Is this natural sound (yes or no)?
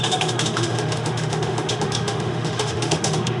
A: no